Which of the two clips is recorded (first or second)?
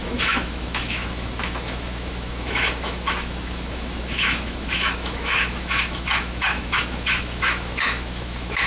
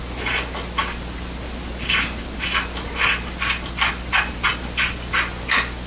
second